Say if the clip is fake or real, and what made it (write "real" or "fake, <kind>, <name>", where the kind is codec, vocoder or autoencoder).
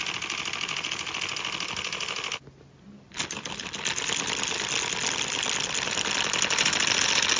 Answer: real